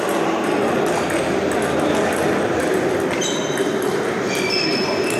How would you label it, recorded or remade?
recorded